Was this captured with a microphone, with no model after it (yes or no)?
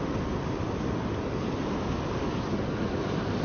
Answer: yes